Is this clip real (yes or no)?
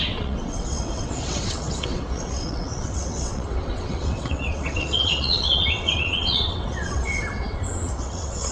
no